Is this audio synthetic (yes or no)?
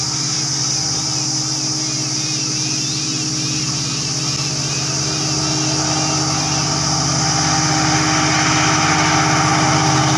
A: no